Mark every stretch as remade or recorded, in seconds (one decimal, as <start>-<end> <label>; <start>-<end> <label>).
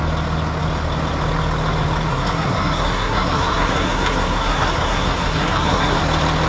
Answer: 0.0-2.1 recorded; 2.1-6.0 remade; 6.0-6.5 recorded